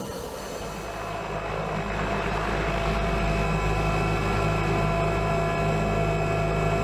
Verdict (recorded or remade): recorded